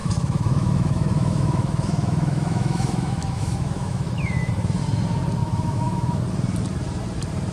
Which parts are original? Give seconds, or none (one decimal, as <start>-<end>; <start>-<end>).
4.5-5.4; 6.2-7.5